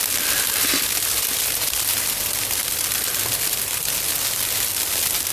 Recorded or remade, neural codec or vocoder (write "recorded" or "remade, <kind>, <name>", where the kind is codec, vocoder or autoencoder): recorded